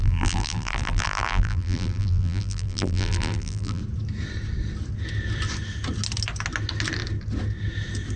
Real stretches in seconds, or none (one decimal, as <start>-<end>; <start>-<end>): 3.8-8.2